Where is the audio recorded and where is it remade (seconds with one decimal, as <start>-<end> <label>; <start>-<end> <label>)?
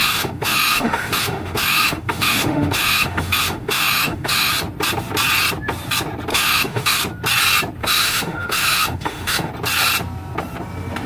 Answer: 0.0-4.5 remade; 4.5-6.3 recorded; 6.3-7.0 remade; 7.0-7.8 recorded; 7.8-9.5 remade; 9.5-11.1 recorded